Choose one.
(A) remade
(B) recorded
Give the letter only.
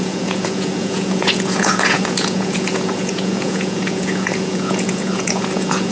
A